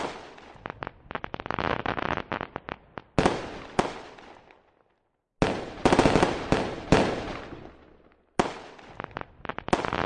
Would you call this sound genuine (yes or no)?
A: yes